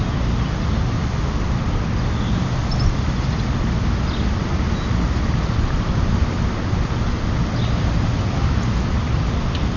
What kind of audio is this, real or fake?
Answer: real